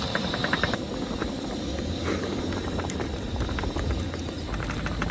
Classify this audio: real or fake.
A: real